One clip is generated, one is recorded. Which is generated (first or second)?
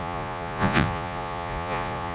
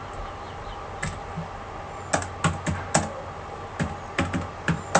first